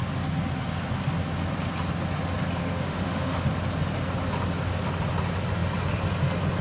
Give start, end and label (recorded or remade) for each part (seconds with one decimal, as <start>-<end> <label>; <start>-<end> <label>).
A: 0.0-2.6 recorded; 2.6-3.5 remade; 3.5-6.6 recorded